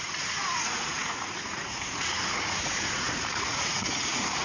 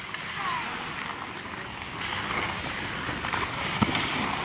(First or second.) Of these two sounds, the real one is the second